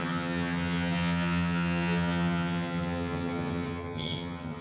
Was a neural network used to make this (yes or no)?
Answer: yes